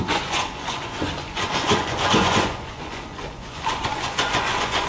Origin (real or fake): fake